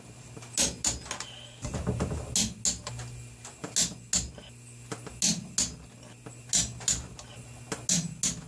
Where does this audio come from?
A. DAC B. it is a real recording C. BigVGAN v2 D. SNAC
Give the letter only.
B